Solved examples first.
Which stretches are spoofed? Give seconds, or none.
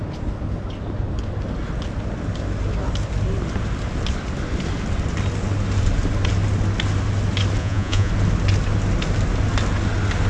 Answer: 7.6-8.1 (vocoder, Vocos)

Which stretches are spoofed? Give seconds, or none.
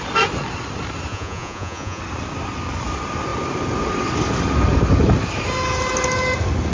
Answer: 1.1-2.0 (vocoder, Vocos)